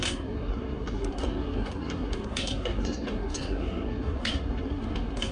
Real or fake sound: fake